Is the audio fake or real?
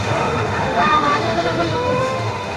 fake